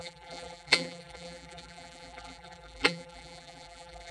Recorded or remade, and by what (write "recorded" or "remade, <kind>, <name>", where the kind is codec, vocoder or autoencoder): remade, vocoder, BigVGAN v2